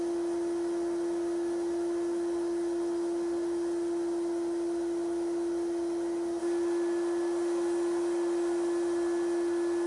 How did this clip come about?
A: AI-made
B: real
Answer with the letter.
B